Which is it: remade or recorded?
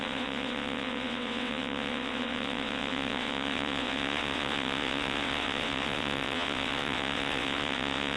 remade